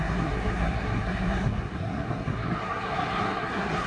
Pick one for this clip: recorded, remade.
remade